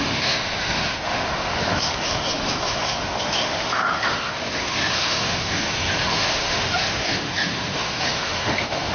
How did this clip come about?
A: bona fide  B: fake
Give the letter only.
B